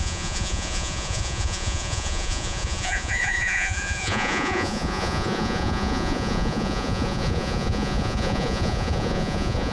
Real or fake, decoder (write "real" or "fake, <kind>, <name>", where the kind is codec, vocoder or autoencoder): fake, vocoder, Vocos